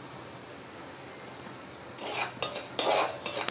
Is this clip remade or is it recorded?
recorded